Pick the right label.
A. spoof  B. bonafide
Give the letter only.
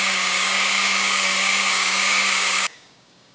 A